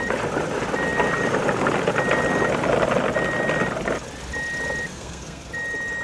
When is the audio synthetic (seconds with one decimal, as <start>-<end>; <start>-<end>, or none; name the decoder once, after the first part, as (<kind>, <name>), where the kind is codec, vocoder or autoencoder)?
4.9-5.5 (codec, SNAC)